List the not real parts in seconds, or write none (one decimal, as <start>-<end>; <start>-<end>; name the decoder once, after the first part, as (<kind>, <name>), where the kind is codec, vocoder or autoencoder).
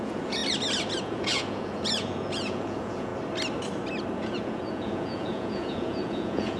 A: 0.0-0.4 (vocoder, Vocos); 1.0-3.1; 4.1-6.6